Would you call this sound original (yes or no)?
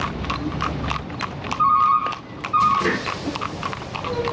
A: yes